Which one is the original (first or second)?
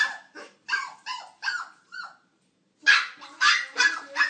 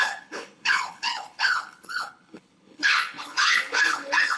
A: first